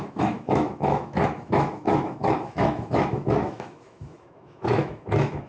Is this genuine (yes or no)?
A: no